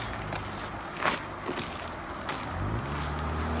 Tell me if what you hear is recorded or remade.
recorded